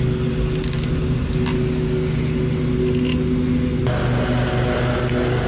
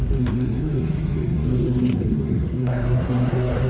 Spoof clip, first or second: second